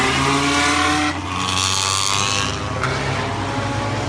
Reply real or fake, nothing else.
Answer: real